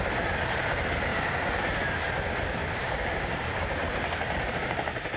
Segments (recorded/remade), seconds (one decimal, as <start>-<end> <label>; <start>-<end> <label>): 0.0-2.6 recorded; 2.6-3.3 remade; 3.3-5.2 recorded